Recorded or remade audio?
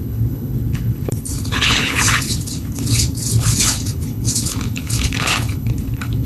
remade